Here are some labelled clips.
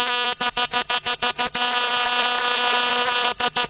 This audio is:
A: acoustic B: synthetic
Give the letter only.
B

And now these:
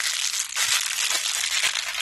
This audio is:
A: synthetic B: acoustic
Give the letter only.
B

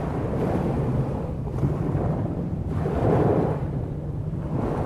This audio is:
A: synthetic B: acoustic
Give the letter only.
A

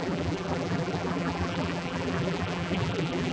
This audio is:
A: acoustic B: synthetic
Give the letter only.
B